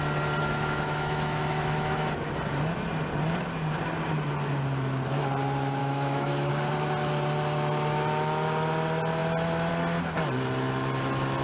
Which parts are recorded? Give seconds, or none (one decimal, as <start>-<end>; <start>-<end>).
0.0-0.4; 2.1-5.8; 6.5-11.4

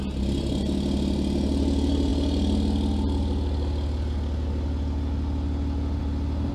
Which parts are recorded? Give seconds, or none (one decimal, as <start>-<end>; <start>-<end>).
0.0-6.5

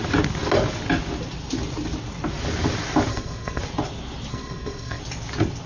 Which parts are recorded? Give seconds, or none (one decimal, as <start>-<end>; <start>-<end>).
0.0-3.1; 3.6-4.3; 5.0-5.7

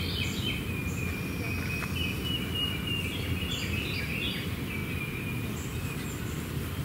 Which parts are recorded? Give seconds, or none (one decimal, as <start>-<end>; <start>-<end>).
0.8-3.1; 4.8-5.9

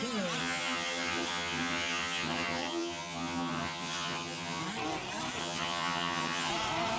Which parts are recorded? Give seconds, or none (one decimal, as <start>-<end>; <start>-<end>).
0.0-0.4; 4.6-5.4; 6.5-7.0